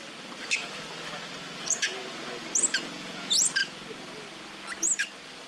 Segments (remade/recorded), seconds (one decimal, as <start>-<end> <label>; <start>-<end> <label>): 0.0-5.5 recorded